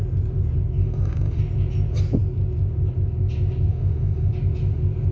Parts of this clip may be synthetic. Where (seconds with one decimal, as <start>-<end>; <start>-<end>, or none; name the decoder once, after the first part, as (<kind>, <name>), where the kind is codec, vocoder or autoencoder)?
0.8-1.4 (autoencoder, DAC-VAE); 3.7-4.3